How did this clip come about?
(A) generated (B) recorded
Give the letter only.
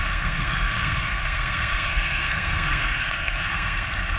A